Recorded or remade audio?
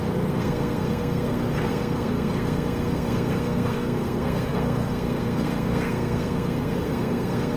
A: remade